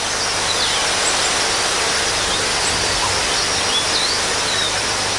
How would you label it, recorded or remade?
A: recorded